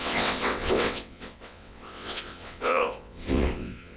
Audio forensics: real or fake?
fake